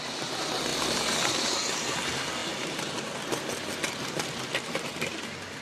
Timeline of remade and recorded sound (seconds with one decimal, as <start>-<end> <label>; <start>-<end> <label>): 0.0-2.4 recorded; 2.4-3.0 remade; 3.0-5.6 recorded